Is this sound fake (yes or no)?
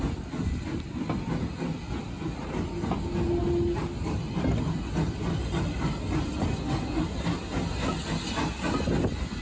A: no